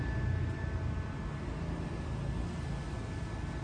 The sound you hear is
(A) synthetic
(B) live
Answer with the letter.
B